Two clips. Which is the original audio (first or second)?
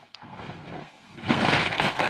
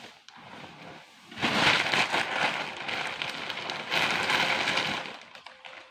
second